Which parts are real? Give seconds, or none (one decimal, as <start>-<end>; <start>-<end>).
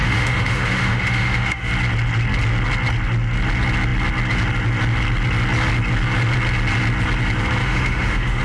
1.7-7.6